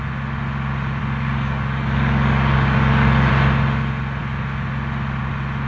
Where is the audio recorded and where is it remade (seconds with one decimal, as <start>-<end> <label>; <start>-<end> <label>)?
0.0-1.0 recorded; 1.0-3.3 remade; 3.3-5.7 recorded